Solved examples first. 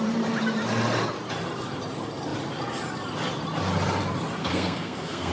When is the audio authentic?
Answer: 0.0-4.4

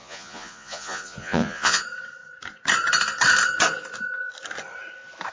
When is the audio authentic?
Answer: 1.8-5.3

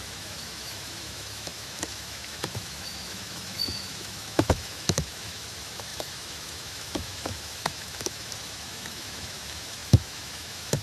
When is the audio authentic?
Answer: none

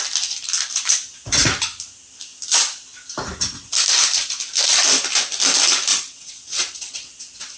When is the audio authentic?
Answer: 0.0-5.9; 7.1-7.6